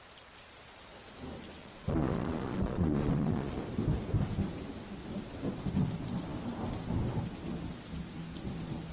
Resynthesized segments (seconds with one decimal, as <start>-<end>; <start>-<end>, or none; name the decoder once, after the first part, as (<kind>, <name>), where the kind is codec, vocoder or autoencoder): 1.6-3.6 (vocoder, Vocos)

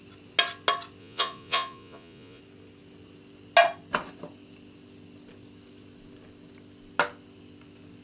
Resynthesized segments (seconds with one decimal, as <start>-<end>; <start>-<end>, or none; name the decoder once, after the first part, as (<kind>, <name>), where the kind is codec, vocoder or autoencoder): 1.0-2.4 (vocoder, Vocos)

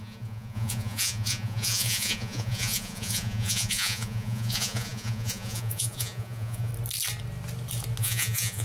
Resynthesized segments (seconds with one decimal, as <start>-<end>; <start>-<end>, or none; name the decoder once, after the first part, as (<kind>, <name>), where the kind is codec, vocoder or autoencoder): 0.0-6.7 (vocoder, Vocos); 8.0-8.6

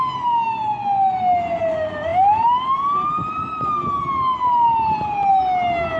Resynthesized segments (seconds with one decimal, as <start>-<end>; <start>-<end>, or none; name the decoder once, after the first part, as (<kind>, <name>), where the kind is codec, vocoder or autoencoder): none

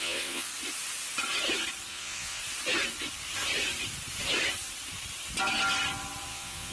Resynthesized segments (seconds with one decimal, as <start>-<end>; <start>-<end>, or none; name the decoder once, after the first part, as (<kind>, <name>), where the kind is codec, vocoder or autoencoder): 0.0-0.5 (vocoder, Vocos); 1.9-2.4; 6.3-6.7